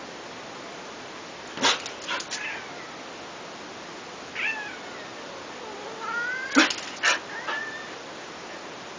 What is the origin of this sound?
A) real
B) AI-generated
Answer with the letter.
A